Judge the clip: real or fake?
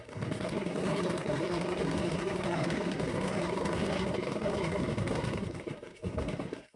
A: fake